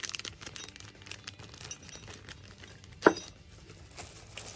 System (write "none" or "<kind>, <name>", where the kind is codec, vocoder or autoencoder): none